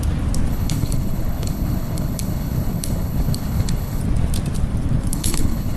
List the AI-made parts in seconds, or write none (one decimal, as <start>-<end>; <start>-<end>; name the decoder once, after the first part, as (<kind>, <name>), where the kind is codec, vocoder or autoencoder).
0.5-4.0 (codec, HILCodec); 5.1-5.8